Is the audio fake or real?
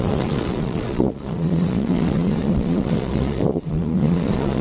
fake